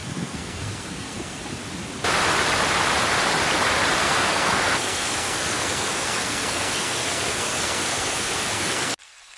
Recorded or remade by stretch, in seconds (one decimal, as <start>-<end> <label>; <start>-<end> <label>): 0.0-1.4 remade; 1.4-4.0 recorded; 4.0-9.4 remade

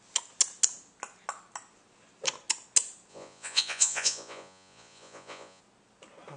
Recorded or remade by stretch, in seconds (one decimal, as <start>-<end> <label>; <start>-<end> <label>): 0.0-3.1 recorded; 3.1-5.6 remade; 5.6-6.4 recorded

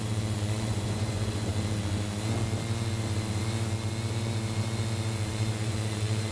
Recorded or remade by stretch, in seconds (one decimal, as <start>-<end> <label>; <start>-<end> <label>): 0.0-1.5 remade; 1.5-5.3 recorded; 5.3-6.3 remade

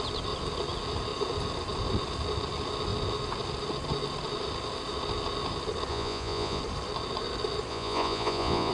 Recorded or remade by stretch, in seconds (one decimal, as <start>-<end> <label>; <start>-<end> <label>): 0.0-5.9 recorded; 5.9-6.6 remade; 6.6-7.7 recorded; 7.7-8.7 remade

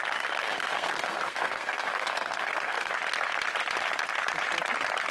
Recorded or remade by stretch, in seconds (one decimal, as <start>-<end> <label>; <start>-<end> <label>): 0.0-0.4 recorded; 0.4-2.9 remade; 2.9-5.1 recorded

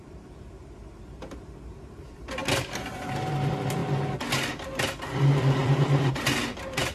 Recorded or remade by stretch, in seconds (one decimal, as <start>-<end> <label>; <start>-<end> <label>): 0.0-3.8 remade; 3.8-4.5 recorded; 4.5-6.9 remade

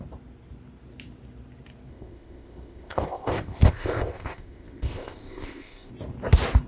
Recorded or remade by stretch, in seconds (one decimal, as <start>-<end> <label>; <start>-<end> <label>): 0.0-1.9 recorded; 1.9-5.9 remade; 5.9-6.7 recorded

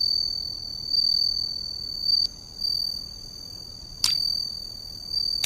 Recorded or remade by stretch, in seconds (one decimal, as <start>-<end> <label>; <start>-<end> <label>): 0.0-5.5 recorded